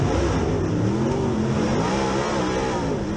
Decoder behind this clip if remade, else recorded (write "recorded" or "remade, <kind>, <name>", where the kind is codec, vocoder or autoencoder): recorded